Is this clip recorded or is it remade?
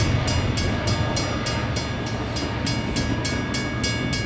recorded